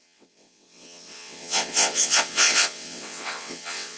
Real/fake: fake